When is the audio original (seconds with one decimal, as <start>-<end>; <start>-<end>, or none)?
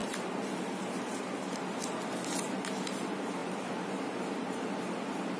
0.0-5.4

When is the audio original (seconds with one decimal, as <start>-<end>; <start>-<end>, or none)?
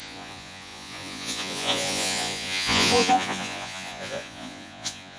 none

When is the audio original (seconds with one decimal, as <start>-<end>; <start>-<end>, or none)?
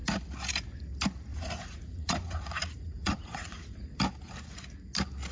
0.0-1.3; 4.0-5.3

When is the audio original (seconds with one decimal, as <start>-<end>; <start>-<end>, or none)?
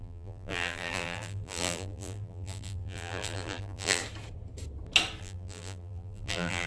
4.0-5.2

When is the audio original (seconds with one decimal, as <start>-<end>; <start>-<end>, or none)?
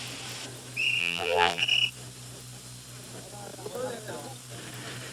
0.0-1.0; 1.6-5.1